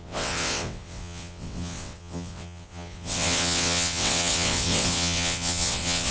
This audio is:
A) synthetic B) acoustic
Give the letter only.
A